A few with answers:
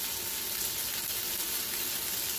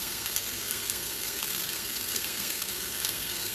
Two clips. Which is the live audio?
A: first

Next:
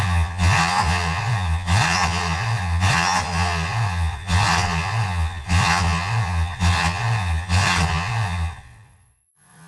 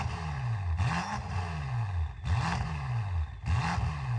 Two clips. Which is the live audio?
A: second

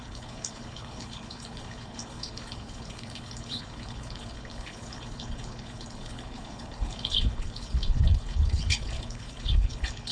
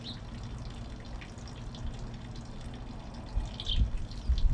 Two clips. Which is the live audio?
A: second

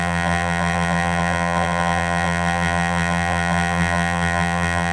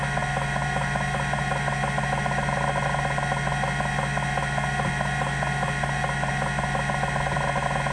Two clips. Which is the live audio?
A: second